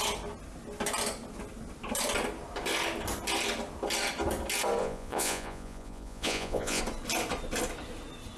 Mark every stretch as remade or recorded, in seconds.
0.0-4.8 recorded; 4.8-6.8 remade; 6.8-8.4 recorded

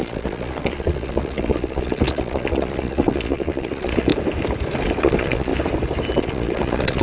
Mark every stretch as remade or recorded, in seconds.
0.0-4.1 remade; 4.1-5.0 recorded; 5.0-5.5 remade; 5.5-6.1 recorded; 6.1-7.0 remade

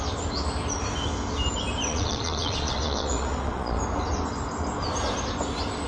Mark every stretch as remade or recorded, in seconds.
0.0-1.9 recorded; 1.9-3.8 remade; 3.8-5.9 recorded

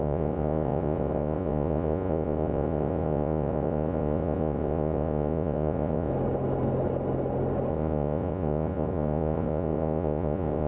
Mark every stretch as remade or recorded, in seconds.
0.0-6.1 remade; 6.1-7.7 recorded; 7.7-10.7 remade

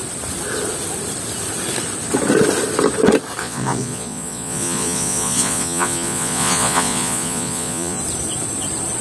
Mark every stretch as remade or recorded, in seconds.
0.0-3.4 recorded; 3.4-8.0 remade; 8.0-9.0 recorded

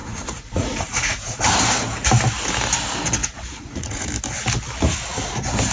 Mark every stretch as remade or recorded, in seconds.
0.0-1.4 remade; 1.4-3.2 recorded; 3.2-4.1 remade; 4.1-5.7 recorded